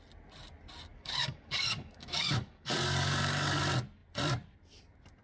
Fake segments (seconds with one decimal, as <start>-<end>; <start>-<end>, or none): 0.9-3.6